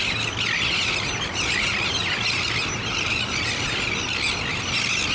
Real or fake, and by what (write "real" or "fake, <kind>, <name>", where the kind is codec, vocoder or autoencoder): real